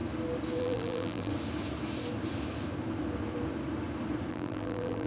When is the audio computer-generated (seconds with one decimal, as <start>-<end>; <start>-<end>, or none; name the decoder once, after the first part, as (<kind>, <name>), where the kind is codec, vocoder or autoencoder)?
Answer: 0.6-1.3 (vocoder, BigVGAN v2); 4.3-5.1